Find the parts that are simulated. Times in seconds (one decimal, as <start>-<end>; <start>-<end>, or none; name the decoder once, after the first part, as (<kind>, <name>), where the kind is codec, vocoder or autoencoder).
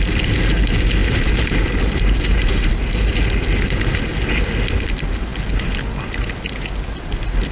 1.0-2.7 (vocoder, BigVGAN v2)